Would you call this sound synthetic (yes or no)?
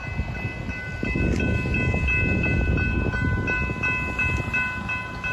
no